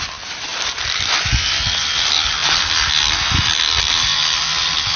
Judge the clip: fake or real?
real